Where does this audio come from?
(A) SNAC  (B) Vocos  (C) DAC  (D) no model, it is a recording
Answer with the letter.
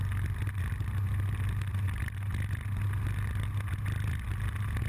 D